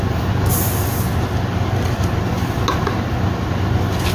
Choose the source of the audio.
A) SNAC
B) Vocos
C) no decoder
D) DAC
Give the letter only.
C